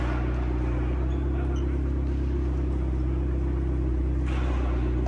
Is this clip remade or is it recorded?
recorded